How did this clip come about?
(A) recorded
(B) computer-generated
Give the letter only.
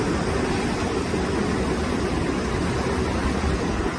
A